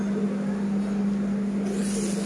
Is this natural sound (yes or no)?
yes